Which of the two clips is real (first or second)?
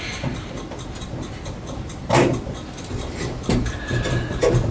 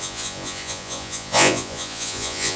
first